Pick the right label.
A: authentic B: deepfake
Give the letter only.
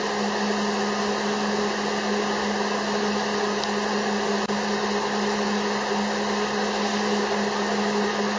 A